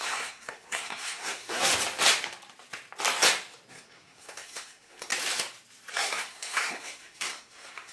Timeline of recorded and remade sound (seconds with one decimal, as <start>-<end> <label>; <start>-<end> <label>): 0.0-1.7 remade; 1.7-3.7 recorded; 3.7-5.1 remade; 5.1-5.9 recorded; 5.9-7.9 remade